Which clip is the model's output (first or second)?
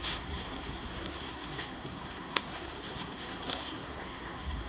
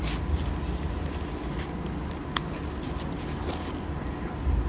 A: first